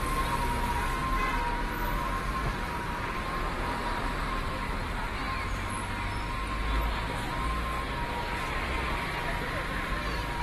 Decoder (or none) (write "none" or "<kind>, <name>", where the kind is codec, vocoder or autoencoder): none